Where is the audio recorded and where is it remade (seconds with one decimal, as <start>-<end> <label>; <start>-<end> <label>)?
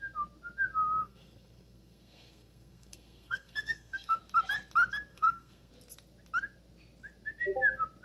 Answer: 0.0-1.0 recorded; 1.0-4.2 remade; 4.2-5.1 recorded; 5.1-5.7 remade; 5.7-8.0 recorded